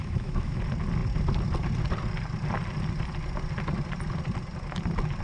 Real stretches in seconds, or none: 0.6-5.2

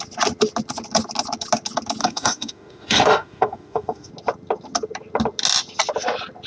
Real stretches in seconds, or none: 0.0-2.0; 4.1-6.5

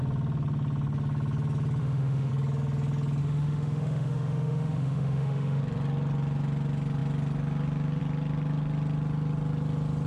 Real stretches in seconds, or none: 0.0-1.8; 2.3-3.2; 5.6-10.1